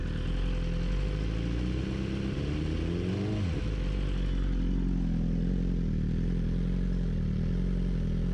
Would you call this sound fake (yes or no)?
no